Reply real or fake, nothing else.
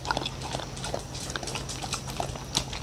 real